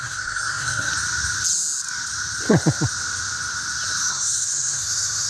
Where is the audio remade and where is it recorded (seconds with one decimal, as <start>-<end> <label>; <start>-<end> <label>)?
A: 0.0-0.9 remade; 0.9-4.1 recorded; 4.1-5.3 remade